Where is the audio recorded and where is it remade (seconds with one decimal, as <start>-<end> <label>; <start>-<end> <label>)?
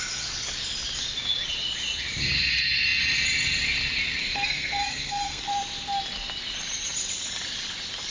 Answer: 0.0-4.2 recorded; 4.2-5.4 remade; 5.4-8.1 recorded